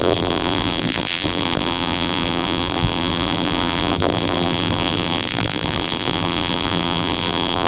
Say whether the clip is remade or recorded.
remade